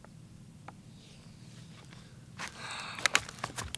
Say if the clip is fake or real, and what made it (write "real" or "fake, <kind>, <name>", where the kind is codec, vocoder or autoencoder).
real